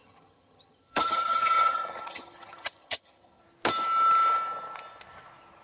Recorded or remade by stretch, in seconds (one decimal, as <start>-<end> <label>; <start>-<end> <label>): 0.0-3.4 remade; 3.4-5.6 recorded